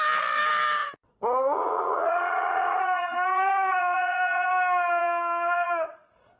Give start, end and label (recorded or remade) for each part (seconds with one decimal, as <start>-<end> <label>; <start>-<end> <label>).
0.0-0.8 recorded; 0.8-4.5 remade; 4.5-5.0 recorded; 5.0-6.4 remade